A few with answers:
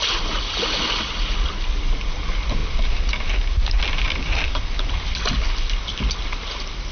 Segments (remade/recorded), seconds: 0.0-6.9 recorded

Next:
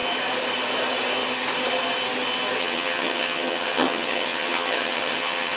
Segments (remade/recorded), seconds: 0.0-2.6 recorded; 2.6-5.6 remade